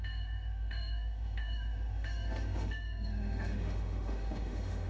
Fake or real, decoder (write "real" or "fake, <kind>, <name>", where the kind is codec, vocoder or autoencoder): fake, autoencoder, DAC-VAE